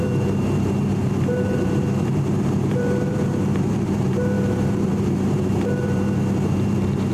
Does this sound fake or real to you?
fake